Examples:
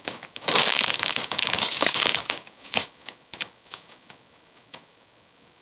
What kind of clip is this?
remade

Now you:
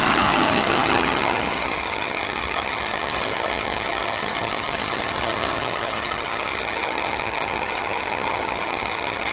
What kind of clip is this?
remade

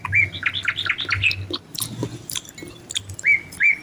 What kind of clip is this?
recorded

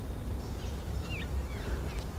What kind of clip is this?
recorded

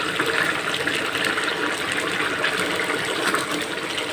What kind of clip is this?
recorded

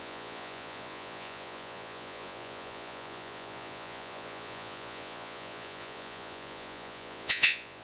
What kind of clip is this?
remade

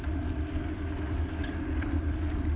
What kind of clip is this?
recorded